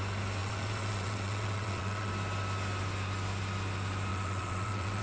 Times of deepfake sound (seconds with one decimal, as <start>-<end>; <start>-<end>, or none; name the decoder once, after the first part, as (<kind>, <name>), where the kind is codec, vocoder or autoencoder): 0.4-2.1 (vocoder, WaveNeXt); 4.1-5.0